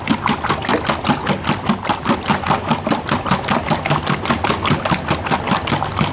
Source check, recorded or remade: recorded